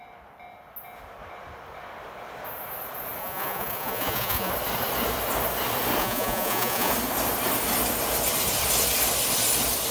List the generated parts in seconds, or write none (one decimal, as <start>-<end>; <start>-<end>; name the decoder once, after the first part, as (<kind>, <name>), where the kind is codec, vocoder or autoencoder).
3.2-4.5 (vocoder, Vocos); 6.0-6.9